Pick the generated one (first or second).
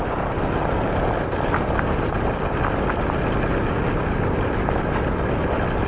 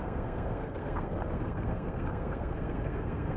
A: second